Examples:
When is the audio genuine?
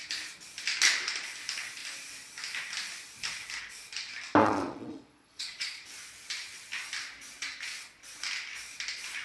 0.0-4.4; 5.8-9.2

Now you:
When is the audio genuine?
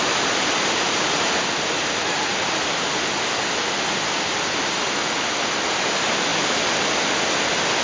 0.0-7.8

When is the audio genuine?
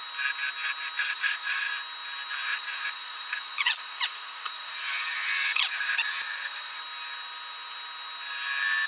0.0-1.0; 1.7-2.5; 6.8-8.9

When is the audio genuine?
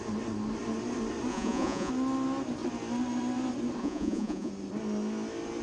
0.0-1.3; 1.9-3.8; 4.5-5.6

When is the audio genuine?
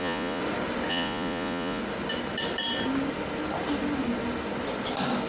0.4-0.9; 1.8-5.3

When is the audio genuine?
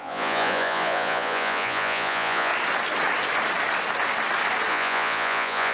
2.5-4.7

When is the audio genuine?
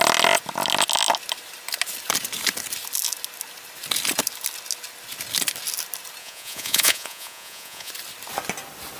0.0-6.2; 7.9-9.0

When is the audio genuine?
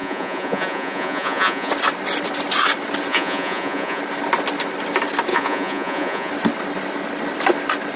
1.7-3.1; 4.0-5.3; 6.3-8.0